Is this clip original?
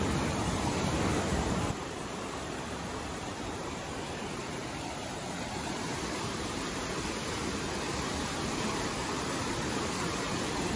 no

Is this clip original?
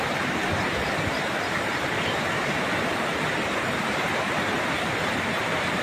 no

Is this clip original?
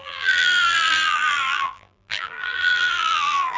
no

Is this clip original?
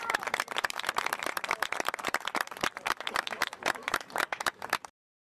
no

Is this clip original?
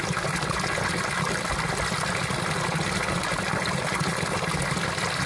yes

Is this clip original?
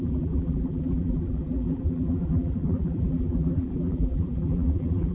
no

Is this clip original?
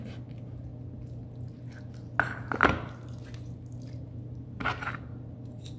yes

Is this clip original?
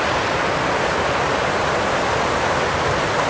yes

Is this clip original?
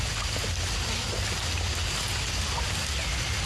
yes